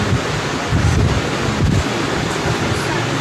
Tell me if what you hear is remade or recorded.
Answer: recorded